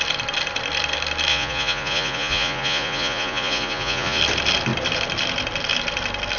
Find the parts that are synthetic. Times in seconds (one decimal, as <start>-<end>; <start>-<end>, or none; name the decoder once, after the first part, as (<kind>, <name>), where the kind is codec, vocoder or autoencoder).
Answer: 1.3-4.2 (vocoder, Vocos)